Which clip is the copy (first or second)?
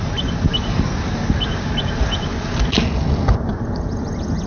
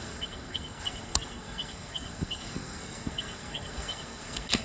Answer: second